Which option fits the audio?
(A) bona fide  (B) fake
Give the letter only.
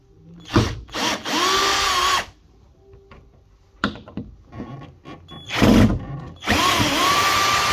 A